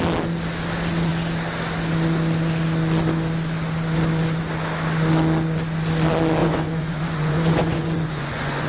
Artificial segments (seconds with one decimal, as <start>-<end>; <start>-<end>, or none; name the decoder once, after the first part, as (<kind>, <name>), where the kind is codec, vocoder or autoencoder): 6.4-8.7 (vocoder, Vocos)

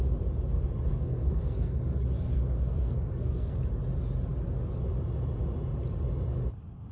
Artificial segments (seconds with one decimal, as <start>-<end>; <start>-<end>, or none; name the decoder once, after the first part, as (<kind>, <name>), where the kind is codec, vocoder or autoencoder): 0.9-1.8 (codec, SNAC); 2.3-3.6

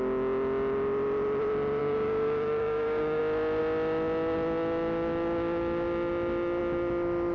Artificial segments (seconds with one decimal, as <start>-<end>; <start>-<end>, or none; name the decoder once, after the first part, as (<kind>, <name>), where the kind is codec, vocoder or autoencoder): 1.8-3.2 (codec, DAC)

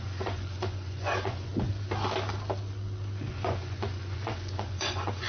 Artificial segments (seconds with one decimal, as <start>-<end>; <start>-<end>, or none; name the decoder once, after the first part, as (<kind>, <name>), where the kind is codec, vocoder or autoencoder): 0.0-1.5 (vocoder, Vocos); 3.3-5.3

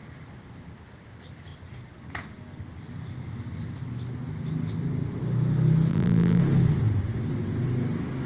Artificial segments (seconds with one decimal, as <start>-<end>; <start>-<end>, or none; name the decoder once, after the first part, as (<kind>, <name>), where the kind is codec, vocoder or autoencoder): 5.9-6.4 (vocoder, BigVGAN v2)

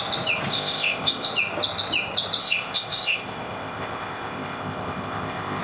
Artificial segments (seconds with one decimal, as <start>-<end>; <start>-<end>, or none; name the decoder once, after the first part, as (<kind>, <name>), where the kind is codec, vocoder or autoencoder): 0.5-1.3 (codec, ZipCodec); 2.4-5.6

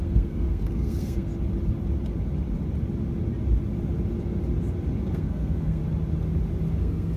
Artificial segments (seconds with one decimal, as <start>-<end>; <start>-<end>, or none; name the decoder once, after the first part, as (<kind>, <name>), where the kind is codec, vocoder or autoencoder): 0.0-1.3 (codec, SNAC); 5.0-5.8; 6.8-7.2